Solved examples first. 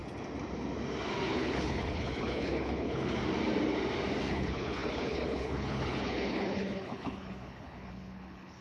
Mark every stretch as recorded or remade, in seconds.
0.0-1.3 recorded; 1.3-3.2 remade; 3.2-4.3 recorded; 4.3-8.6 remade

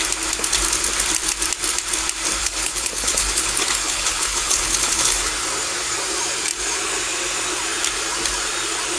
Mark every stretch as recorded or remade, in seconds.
0.0-2.4 recorded; 2.4-5.3 remade; 5.3-9.0 recorded

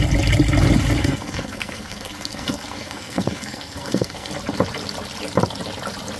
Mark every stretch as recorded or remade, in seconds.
0.0-1.0 recorded; 1.0-4.3 remade; 4.3-6.2 recorded

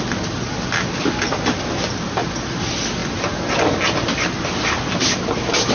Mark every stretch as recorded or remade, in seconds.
0.0-5.7 recorded

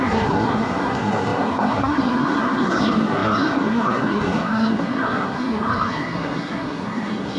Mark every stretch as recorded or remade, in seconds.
0.0-7.4 remade

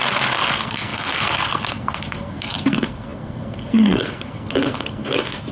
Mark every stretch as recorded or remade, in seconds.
0.0-5.5 remade

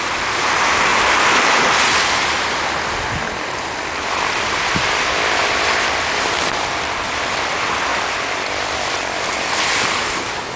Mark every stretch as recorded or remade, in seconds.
0.0-0.9 remade; 0.9-1.7 recorded; 1.7-10.6 remade

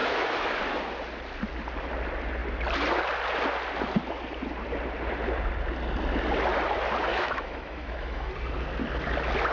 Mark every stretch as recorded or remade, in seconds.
0.0-0.6 remade; 0.6-7.1 recorded; 7.1-8.3 remade; 8.3-9.5 recorded